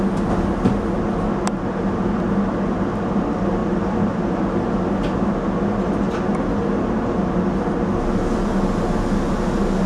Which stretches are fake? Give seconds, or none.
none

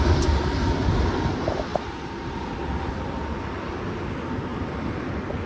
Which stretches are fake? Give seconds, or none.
none

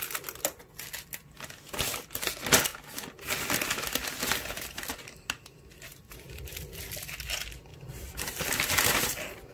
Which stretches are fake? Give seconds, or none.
none

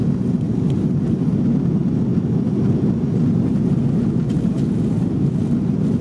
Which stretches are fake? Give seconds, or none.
none

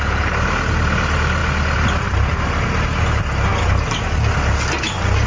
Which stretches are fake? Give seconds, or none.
none

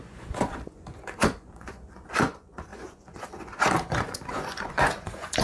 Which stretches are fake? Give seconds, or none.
0.0-5.4

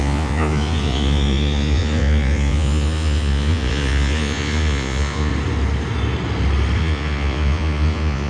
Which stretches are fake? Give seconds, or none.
0.0-5.3; 6.8-8.3